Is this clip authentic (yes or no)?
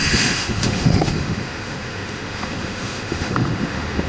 no